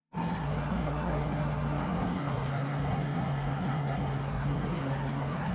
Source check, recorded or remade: remade